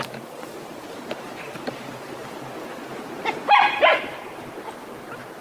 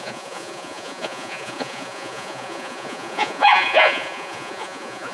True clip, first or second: first